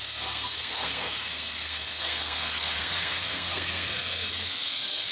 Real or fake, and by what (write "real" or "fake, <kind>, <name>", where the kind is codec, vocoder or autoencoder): fake, codec, SNAC